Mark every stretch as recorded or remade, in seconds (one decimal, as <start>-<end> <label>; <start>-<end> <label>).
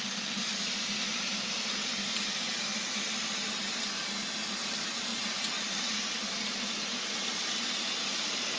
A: 0.0-5.1 recorded; 5.1-6.1 remade; 6.1-8.6 recorded